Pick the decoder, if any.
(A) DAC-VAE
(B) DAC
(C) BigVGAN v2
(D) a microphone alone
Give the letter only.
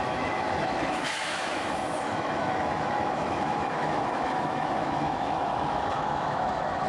A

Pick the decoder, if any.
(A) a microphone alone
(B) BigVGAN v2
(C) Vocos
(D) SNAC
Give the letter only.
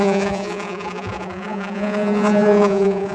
C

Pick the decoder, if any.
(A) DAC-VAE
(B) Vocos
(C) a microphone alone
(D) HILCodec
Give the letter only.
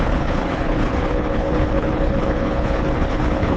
D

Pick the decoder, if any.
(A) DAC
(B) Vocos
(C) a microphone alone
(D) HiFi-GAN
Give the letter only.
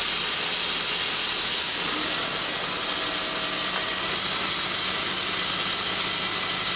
C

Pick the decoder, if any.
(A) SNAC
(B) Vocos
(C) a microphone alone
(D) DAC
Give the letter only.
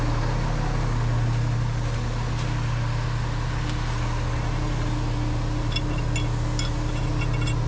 C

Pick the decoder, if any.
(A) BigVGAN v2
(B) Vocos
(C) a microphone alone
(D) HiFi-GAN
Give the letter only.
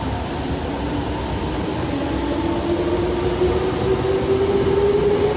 C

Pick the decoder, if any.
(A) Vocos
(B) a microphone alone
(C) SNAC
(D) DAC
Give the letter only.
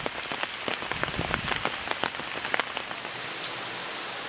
B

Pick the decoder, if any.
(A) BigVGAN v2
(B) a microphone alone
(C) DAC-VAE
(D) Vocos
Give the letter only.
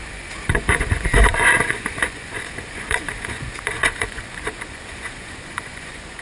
D